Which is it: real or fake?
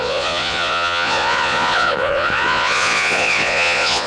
fake